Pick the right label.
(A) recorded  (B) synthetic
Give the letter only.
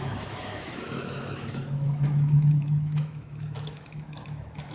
B